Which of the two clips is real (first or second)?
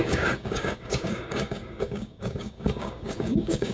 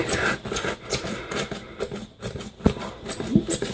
second